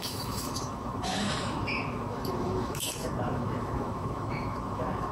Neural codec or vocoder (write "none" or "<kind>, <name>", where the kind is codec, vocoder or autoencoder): autoencoder, DAC-VAE